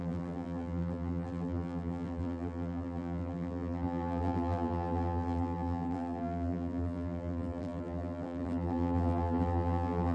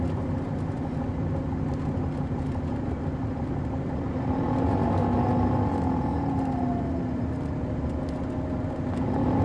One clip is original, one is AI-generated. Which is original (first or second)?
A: second